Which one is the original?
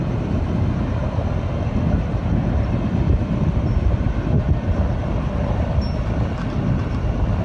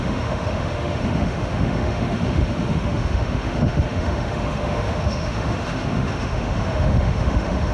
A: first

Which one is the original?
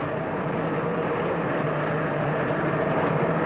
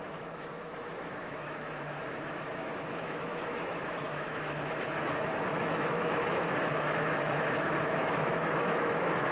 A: first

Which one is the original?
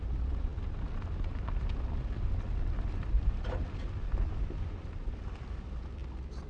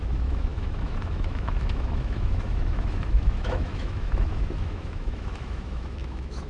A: first